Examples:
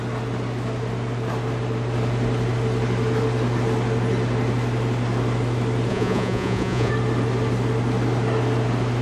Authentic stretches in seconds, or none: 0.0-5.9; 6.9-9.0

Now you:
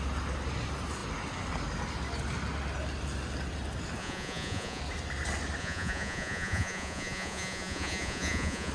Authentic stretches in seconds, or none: 0.0-4.0; 4.8-5.6

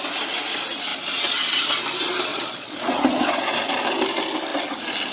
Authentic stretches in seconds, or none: 0.0-2.3; 3.6-5.1

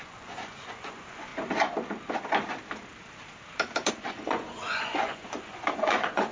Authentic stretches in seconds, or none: 1.3-3.9

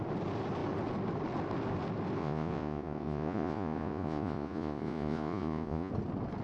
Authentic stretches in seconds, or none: 0.0-2.2; 5.9-6.4

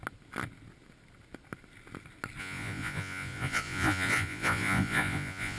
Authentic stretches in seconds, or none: 0.0-2.4

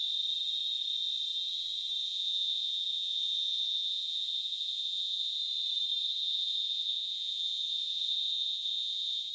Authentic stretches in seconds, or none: 0.0-2.0; 5.4-6.0

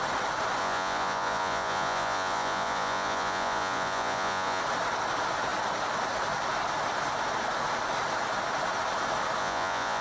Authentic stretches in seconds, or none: 0.0-0.6; 4.6-9.4